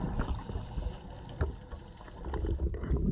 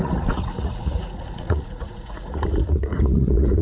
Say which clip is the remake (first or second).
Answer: second